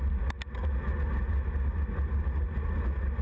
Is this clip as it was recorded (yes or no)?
yes